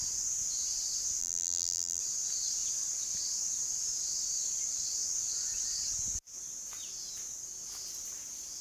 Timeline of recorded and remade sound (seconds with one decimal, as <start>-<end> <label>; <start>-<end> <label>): 0.0-1.2 recorded; 1.2-2.0 remade; 2.0-8.6 recorded